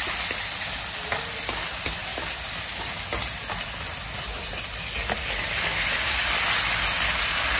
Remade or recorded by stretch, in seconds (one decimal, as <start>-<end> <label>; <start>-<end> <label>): 0.0-7.6 recorded